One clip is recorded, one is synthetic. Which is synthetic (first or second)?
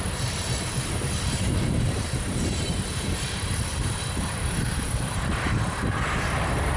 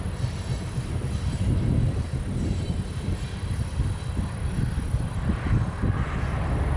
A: first